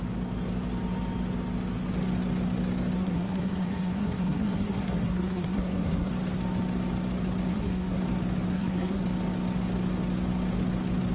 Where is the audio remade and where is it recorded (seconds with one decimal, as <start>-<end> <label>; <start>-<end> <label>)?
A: 0.0-3.0 recorded; 3.0-6.1 remade; 6.1-7.5 recorded; 7.5-8.0 remade; 8.0-8.5 recorded; 8.5-9.0 remade; 9.0-11.1 recorded